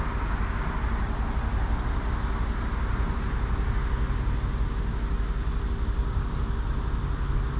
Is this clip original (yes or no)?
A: yes